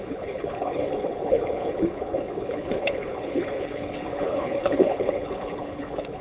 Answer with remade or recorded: remade